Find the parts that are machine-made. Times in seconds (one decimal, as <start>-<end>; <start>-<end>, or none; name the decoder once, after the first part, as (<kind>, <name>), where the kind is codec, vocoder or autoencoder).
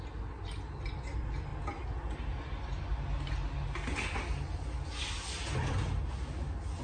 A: none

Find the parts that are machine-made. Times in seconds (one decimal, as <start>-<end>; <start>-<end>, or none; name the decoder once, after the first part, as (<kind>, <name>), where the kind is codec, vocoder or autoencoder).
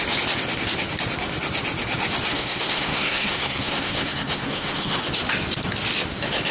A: 2.3-5.0 (codec, SNAC)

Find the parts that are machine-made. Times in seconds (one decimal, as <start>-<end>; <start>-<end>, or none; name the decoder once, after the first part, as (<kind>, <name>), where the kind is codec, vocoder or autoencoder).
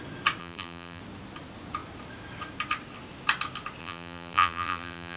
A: 0.4-1.0 (vocoder, BigVGAN v2); 3.8-5.2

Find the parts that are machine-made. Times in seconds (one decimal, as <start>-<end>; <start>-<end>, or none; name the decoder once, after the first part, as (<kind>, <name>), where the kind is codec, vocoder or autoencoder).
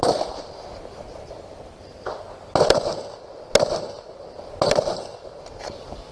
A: 0.0-1.9 (vocoder, BigVGAN v2); 4.4-6.1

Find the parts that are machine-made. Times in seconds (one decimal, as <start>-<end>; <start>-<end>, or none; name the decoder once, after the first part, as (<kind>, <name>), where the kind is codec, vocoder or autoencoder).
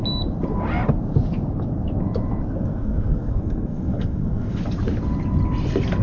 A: 2.6-4.6 (codec, SNAC)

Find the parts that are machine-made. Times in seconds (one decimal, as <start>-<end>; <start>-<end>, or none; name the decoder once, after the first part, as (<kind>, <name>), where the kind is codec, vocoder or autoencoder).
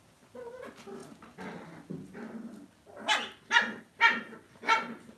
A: none